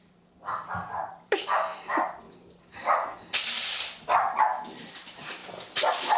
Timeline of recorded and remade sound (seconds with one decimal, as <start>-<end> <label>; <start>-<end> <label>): 0.0-1.7 remade; 1.7-4.8 recorded; 4.8-6.2 remade